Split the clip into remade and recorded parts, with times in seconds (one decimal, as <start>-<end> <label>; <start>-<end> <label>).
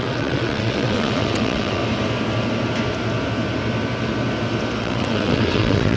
0.0-1.8 remade; 1.8-4.8 recorded; 4.8-6.0 remade